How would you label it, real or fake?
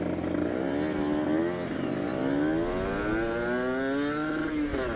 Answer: real